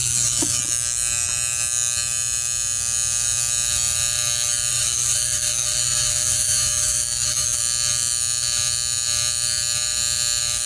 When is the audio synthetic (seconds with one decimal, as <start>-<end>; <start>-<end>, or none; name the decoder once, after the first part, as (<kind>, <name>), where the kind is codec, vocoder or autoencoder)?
0.0-0.6 (autoencoder, DAC-VAE); 4.7-7.6